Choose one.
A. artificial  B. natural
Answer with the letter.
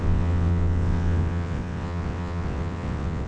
A